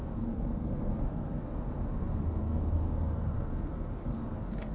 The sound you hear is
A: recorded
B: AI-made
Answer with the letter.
B